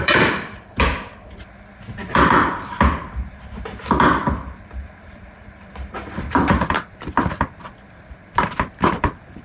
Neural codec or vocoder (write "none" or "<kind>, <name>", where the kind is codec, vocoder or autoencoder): vocoder, BigVGAN v2